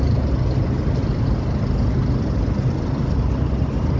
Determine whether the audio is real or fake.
real